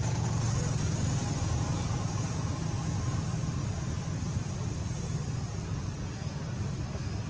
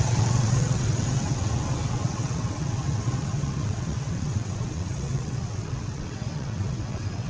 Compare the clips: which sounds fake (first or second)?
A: second